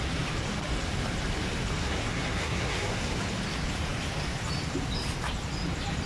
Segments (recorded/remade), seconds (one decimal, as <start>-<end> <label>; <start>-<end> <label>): 0.0-1.8 recorded; 1.8-3.2 remade; 3.2-6.1 recorded